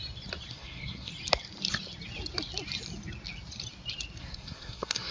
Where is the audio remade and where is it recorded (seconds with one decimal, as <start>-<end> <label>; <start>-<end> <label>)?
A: 0.0-0.5 recorded; 0.5-1.1 remade; 1.1-4.2 recorded; 4.2-5.1 remade